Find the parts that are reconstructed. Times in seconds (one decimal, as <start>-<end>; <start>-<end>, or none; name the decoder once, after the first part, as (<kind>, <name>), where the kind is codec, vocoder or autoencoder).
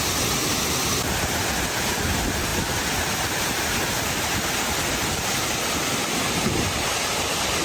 none